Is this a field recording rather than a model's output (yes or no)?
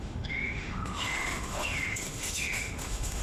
no